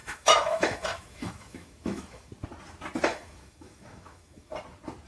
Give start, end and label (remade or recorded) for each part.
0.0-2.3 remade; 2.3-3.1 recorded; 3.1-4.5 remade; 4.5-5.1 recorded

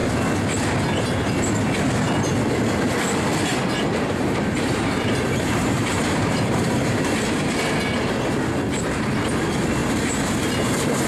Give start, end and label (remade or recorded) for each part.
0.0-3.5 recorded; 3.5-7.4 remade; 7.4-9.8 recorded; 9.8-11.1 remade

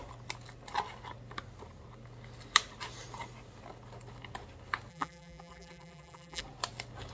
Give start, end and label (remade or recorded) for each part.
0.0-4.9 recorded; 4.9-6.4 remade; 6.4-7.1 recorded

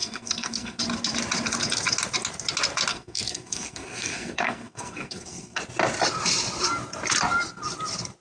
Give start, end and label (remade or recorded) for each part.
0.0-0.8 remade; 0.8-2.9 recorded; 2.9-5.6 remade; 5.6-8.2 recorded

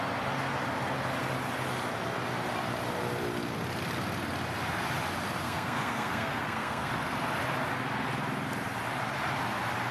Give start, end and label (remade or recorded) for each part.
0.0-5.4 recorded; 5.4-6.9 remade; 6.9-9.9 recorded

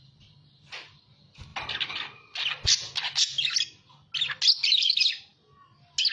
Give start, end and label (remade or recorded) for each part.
0.0-6.1 recorded

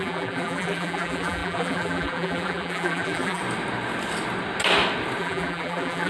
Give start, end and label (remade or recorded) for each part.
0.0-3.4 remade; 3.4-5.2 recorded; 5.2-6.1 remade

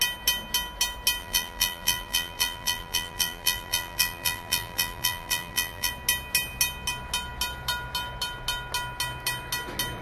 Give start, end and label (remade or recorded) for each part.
0.0-1.2 recorded; 1.2-5.9 remade; 5.9-10.0 recorded